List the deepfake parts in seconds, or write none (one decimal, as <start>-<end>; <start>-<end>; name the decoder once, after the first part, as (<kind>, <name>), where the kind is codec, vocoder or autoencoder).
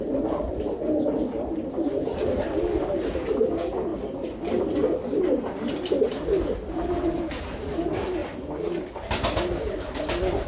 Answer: none